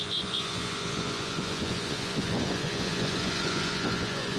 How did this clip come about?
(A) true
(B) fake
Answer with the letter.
B